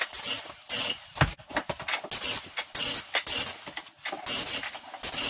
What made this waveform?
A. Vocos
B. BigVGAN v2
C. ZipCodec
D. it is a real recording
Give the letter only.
D